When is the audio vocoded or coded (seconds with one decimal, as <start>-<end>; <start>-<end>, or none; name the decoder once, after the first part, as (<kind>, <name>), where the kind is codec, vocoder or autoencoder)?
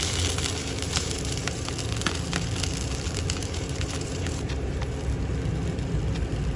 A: 0.6-1.7 (vocoder, BigVGAN v2); 3.4-4.8